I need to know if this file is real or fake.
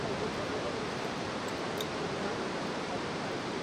fake